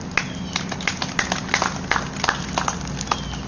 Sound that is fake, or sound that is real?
real